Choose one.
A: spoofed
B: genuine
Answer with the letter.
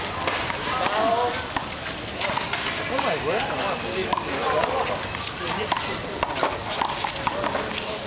B